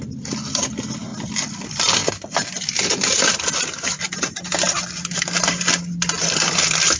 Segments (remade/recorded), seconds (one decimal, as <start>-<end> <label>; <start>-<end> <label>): 0.0-1.1 remade; 1.1-1.6 recorded; 1.6-2.0 remade; 2.0-2.7 recorded; 2.7-7.0 remade